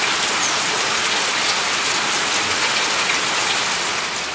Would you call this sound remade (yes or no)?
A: no